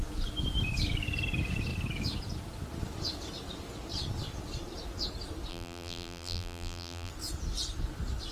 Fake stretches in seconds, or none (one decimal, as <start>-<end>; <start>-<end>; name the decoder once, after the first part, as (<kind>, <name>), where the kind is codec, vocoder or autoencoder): 5.5-7.1 (vocoder, BigVGAN v2)